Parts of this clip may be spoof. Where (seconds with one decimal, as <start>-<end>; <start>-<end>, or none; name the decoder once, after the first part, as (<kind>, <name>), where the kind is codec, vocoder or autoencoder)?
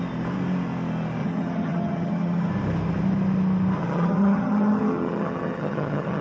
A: 1.2-2.5 (vocoder, HiFi-GAN); 3.8-6.2